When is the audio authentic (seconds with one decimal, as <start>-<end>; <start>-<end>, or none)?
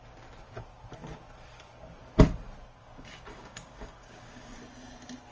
0.0-2.8; 4.6-5.3